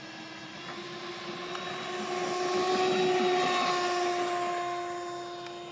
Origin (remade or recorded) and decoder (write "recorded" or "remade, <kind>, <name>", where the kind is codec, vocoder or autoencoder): recorded